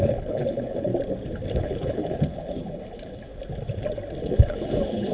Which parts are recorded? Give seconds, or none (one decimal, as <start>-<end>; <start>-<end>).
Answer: 0.9-1.6; 3.3-4.2